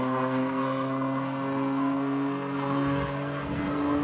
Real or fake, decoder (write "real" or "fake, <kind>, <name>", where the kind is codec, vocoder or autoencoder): fake, codec, SNAC